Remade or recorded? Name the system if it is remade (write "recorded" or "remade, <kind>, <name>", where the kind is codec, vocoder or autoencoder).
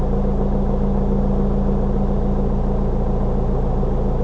recorded